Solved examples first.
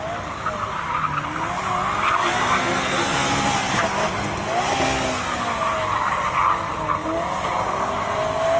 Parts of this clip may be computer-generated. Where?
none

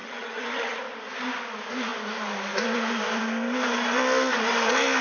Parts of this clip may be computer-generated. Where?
0.0-0.8 (vocoder, HiFi-GAN)